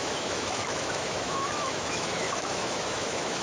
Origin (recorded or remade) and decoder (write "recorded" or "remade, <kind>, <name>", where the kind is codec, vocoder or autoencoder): remade, autoencoder, DAC-VAE